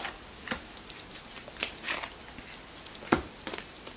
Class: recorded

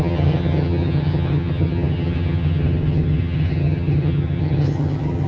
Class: remade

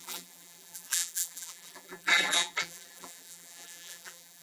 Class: remade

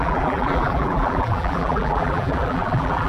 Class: remade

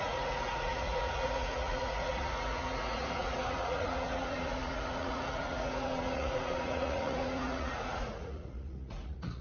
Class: remade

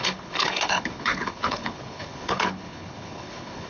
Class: remade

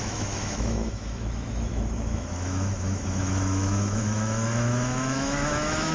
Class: remade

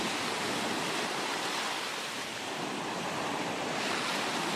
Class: recorded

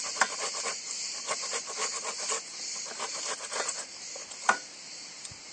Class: recorded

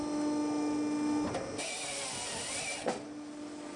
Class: recorded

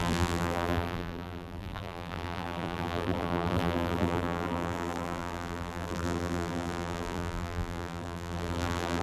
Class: remade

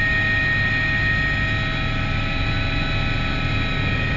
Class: recorded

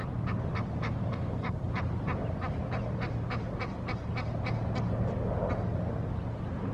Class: recorded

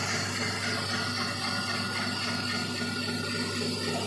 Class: recorded